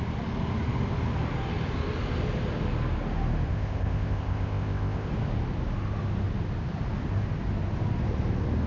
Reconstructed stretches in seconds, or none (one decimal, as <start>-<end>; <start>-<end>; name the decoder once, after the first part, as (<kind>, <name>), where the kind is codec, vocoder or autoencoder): 3.5-5.1 (codec, ZipCodec)